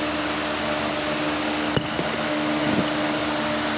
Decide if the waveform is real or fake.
real